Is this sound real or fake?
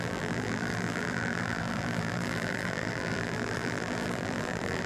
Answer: fake